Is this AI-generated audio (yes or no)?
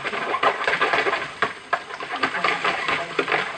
no